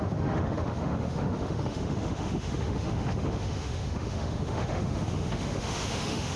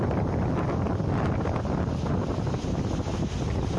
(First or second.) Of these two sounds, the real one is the second